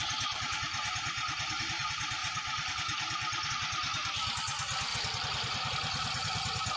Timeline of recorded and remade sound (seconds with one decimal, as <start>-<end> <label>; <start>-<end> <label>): 0.0-2.2 recorded; 2.2-3.5 remade; 3.5-6.8 recorded

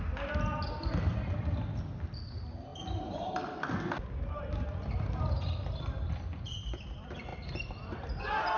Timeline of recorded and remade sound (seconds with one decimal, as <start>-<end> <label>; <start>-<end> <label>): 0.0-8.6 recorded

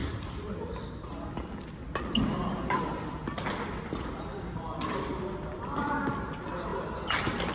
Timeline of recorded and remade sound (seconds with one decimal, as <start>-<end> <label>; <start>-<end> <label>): 0.0-1.0 remade; 1.0-6.7 recorded; 6.7-7.5 remade

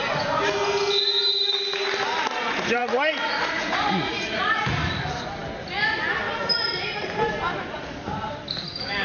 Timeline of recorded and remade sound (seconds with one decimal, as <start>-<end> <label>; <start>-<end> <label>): 0.0-2.8 recorded; 2.8-4.5 remade; 4.5-9.0 recorded

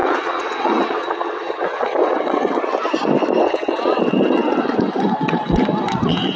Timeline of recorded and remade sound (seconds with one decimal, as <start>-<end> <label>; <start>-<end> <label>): 0.0-2.6 remade; 2.6-3.4 recorded; 3.4-6.4 remade